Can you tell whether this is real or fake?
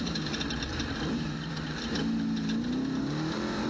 real